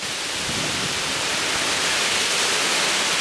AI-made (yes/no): no